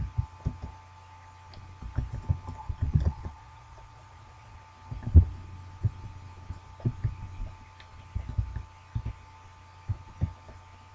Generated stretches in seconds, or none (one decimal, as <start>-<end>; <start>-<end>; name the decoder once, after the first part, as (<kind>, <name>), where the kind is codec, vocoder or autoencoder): 2.6-4.6 (vocoder, Vocos)